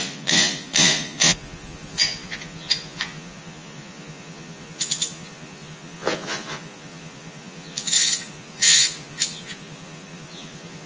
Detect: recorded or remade remade